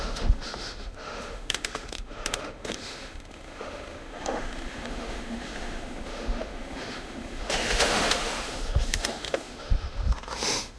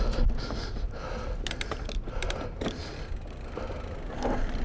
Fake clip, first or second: first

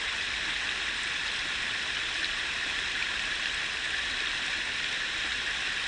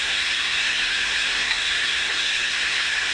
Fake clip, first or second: second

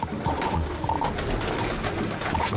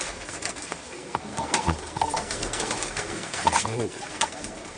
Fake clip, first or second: second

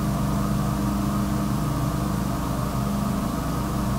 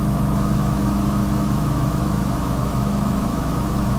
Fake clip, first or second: second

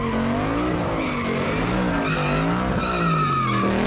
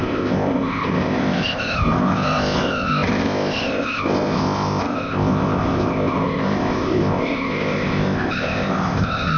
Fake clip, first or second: second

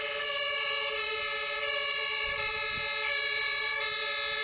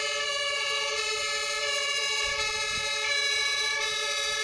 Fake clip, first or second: second